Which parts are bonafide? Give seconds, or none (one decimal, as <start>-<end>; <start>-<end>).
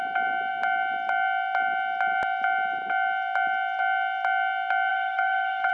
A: 0.0-4.9